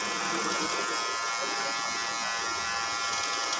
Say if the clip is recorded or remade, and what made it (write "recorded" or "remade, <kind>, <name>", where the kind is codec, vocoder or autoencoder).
recorded